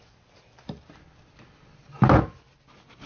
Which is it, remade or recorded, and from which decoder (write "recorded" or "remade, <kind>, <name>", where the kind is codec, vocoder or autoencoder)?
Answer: recorded